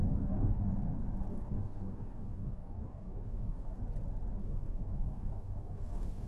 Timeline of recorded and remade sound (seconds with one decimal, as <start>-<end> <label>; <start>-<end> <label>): 0.0-0.6 remade; 0.6-1.3 recorded; 1.3-3.8 remade; 3.8-4.4 recorded; 4.4-6.3 remade